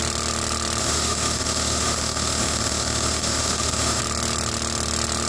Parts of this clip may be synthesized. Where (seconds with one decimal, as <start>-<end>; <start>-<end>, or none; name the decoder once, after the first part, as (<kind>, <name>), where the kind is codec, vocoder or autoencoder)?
0.8-4.0 (autoencoder, DAC-VAE)